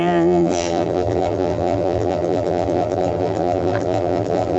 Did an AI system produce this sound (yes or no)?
yes